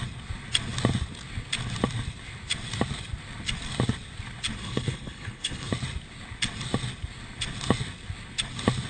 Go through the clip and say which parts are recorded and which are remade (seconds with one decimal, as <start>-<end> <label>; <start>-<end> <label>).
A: 0.0-4.6 recorded; 4.6-5.7 remade; 5.7-8.9 recorded